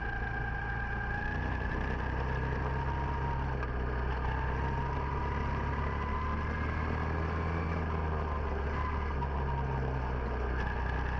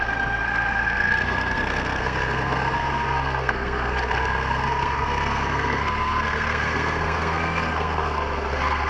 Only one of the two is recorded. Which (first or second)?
first